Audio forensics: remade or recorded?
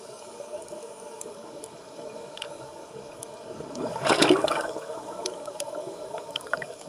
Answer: remade